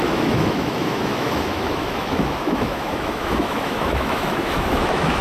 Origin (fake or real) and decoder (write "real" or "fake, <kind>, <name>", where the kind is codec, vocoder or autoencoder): fake, autoencoder, DAC-VAE